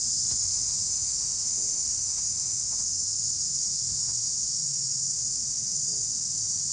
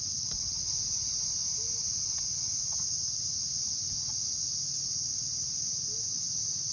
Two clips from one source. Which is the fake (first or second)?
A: first